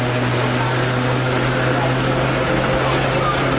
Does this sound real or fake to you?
real